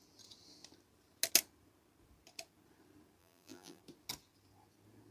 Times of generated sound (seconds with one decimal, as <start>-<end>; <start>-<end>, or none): 3.2-3.8